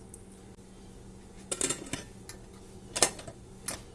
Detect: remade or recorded recorded